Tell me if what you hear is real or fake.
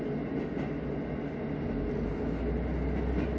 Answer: real